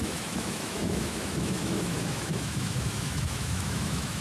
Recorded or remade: remade